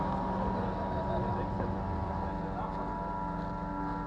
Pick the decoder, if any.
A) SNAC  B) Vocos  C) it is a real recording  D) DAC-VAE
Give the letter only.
C